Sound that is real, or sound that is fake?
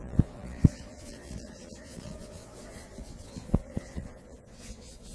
fake